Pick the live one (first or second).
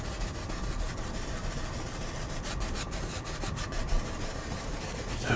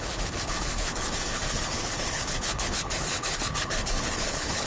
first